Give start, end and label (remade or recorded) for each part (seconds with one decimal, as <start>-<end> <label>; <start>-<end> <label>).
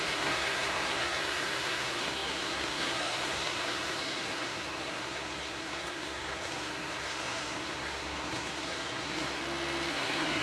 0.0-9.4 remade; 9.4-9.9 recorded; 9.9-10.4 remade